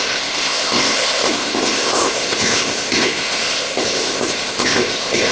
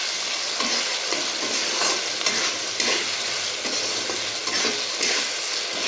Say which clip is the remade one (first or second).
first